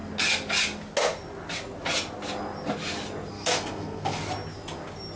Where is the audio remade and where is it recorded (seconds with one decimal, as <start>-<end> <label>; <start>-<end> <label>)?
0.0-3.3 recorded; 3.3-4.2 remade; 4.2-5.2 recorded

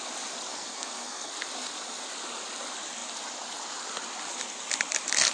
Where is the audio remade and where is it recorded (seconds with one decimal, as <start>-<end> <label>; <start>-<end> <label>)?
0.0-0.5 recorded; 0.5-1.3 remade; 1.3-5.3 recorded

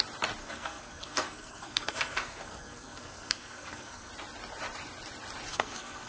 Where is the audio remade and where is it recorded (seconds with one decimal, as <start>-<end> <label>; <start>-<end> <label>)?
0.0-0.4 recorded; 0.4-4.1 remade; 4.1-5.5 recorded; 5.5-6.1 remade

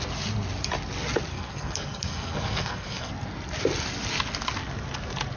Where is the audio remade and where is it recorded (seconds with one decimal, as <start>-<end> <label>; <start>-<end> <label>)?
0.0-1.3 recorded; 1.3-3.1 remade; 3.1-5.4 recorded

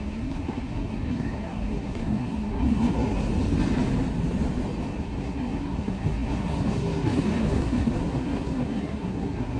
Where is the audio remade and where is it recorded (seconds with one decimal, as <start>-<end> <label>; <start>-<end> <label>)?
0.0-3.3 remade; 3.3-5.0 recorded; 5.0-9.6 remade

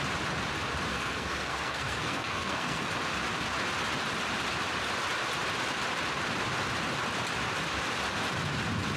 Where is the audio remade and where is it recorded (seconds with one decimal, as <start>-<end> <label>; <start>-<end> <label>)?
0.0-0.9 recorded; 0.9-2.9 remade; 2.9-9.0 recorded

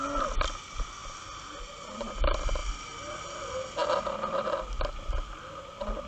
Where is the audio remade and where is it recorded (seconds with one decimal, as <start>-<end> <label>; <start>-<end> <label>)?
0.0-6.1 recorded